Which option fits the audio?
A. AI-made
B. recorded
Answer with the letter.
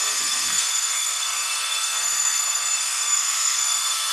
A